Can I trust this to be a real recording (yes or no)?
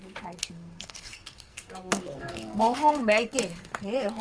no